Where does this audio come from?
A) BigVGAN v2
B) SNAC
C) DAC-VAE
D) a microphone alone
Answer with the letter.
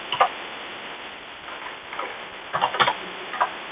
D